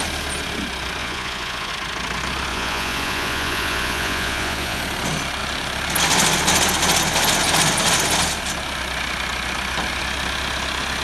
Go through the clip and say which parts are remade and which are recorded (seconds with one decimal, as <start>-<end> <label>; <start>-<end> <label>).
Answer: 0.0-1.0 recorded; 1.0-1.7 remade; 1.7-2.5 recorded; 2.5-4.8 remade; 4.8-11.0 recorded